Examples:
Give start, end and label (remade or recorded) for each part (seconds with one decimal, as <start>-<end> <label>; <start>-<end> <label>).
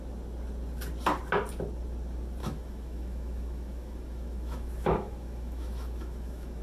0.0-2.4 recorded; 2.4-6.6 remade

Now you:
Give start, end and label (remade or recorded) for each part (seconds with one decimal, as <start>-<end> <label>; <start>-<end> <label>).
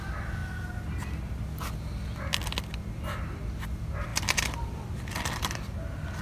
0.0-4.1 recorded; 4.1-5.5 remade; 5.5-6.2 recorded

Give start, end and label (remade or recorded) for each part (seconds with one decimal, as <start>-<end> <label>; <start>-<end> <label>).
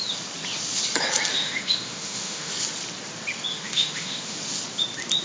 0.0-1.3 recorded; 1.3-2.5 remade; 2.5-3.5 recorded; 3.5-4.4 remade; 4.4-5.2 recorded